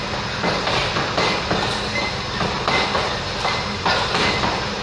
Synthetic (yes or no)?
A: no